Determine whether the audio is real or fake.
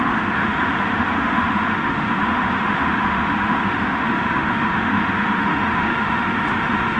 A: fake